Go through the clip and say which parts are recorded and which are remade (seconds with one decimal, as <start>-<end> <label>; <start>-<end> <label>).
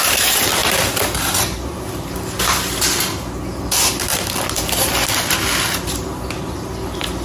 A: 0.0-7.2 recorded